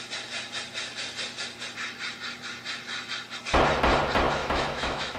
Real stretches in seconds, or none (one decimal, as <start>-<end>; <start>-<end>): 0.0-4.4